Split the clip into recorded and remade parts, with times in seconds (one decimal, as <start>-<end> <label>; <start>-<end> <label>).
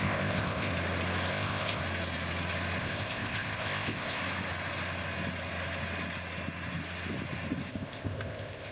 0.0-0.7 remade; 0.7-1.3 recorded; 1.3-1.8 remade; 1.8-2.8 recorded; 2.8-4.2 remade; 4.2-7.7 recorded; 7.7-8.7 remade